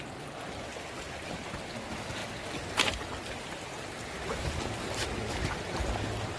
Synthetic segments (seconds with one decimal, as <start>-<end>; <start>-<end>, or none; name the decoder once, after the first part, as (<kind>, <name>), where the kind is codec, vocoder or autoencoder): none